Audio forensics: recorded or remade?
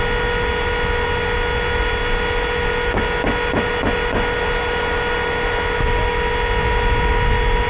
recorded